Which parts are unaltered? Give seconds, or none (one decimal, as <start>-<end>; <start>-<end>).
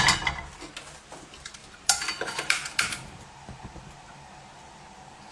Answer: 0.0-1.6; 4.8-5.3